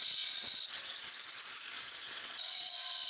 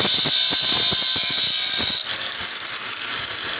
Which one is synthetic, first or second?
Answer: first